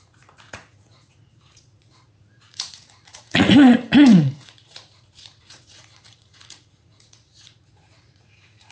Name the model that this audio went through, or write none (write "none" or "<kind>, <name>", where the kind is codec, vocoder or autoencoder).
vocoder, Vocos